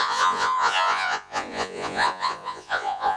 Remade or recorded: remade